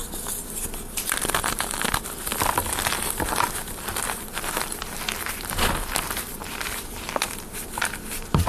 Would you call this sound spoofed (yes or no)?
yes